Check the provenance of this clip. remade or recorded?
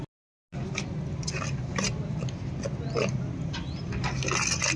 recorded